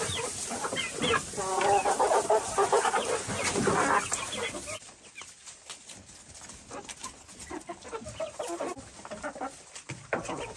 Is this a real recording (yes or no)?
yes